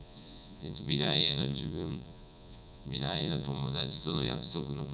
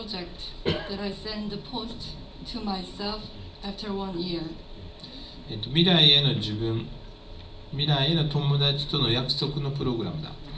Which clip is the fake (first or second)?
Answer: first